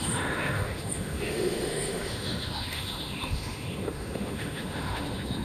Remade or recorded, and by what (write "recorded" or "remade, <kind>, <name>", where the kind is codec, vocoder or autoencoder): remade, autoencoder, DAC-VAE